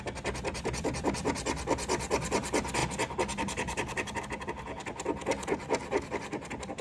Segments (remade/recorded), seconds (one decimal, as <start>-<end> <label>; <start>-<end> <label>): 0.0-5.8 recorded; 5.8-6.8 remade